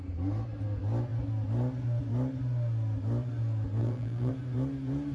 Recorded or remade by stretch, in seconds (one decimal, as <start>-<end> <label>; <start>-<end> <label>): 0.0-3.8 recorded; 3.8-4.3 remade; 4.3-5.1 recorded

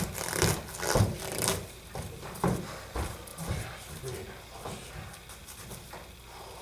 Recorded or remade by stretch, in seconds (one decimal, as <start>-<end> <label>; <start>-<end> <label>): 0.0-6.6 recorded

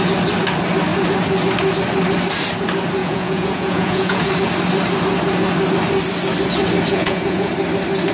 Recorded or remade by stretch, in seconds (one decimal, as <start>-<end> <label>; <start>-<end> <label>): 0.0-3.0 recorded; 3.0-4.3 remade; 4.3-6.9 recorded; 6.9-7.5 remade; 7.5-8.1 recorded

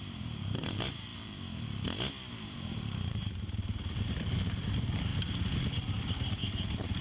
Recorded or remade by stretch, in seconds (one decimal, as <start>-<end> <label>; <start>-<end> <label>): 0.0-1.1 remade; 1.1-2.3 recorded; 2.3-5.1 remade; 5.1-5.9 recorded; 5.9-6.4 remade; 6.4-7.0 recorded

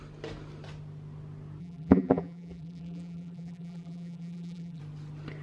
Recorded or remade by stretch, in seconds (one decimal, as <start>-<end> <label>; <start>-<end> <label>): 0.0-1.6 recorded; 1.6-4.8 remade; 4.8-5.4 recorded

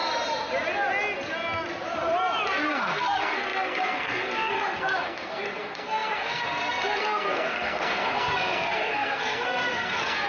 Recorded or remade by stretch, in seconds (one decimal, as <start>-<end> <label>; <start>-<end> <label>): 0.0-2.7 recorded; 2.7-10.3 remade

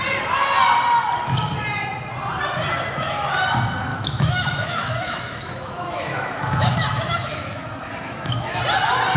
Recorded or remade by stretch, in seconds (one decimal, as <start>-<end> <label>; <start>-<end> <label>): 0.0-3.9 recorded; 3.9-8.6 remade; 8.6-9.2 recorded